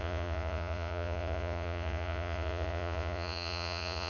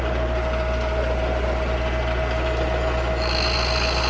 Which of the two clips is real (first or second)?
second